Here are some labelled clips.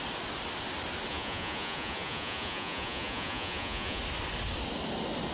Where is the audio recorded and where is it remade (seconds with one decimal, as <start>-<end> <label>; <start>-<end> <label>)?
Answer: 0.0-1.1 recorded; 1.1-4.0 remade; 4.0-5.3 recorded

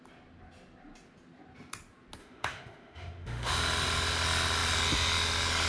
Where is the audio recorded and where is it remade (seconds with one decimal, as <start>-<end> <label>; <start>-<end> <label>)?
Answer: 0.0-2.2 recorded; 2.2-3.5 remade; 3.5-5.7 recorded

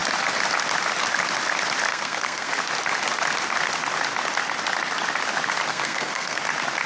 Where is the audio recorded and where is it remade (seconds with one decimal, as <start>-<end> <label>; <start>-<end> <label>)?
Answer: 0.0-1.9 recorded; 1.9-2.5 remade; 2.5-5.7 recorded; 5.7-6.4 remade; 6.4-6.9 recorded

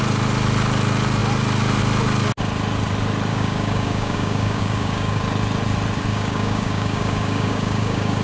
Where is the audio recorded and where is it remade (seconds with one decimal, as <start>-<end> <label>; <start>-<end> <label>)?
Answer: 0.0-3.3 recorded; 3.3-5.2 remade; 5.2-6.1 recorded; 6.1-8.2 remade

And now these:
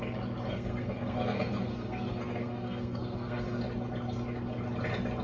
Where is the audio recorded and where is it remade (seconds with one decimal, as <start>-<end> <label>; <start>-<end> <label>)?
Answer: 0.0-0.5 recorded; 0.5-3.6 remade; 3.6-5.2 recorded

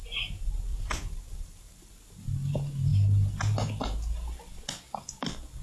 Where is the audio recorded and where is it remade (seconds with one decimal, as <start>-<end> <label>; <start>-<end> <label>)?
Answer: 0.0-0.7 recorded; 0.7-1.9 remade; 1.9-5.6 recorded